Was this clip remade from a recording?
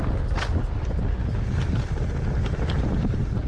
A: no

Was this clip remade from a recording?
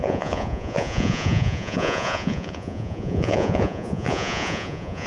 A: yes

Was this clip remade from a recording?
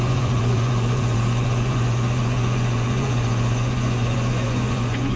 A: yes